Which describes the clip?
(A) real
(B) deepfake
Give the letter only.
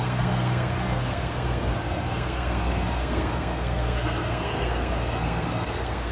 B